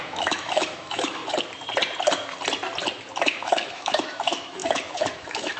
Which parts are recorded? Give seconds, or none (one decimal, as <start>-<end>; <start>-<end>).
1.2-3.2